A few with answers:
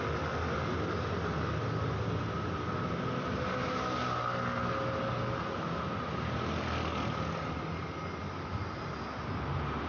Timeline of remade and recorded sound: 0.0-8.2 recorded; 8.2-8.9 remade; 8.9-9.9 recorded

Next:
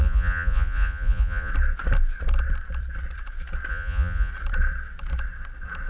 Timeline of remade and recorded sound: 0.0-1.5 remade; 1.5-3.7 recorded; 3.7-4.3 remade; 4.3-5.9 recorded

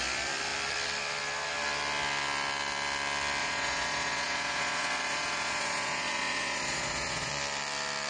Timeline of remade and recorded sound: 0.0-3.4 recorded; 3.4-7.3 remade; 7.3-8.1 recorded